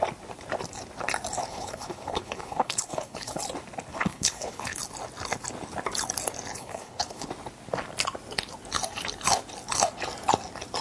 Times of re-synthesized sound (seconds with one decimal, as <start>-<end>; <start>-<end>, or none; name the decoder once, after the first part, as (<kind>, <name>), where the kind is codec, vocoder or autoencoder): 1.5-3.4 (codec, HILCodec); 3.9-4.8; 6.5-7.3